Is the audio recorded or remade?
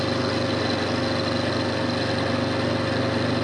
recorded